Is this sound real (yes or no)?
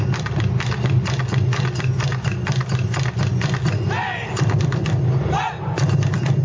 yes